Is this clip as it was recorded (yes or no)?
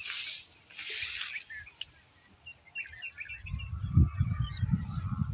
yes